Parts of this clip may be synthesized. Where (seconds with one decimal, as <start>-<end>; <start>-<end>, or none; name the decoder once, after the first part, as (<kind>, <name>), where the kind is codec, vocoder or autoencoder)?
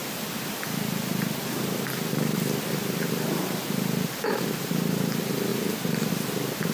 none